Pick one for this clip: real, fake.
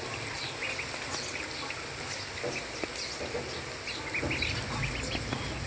real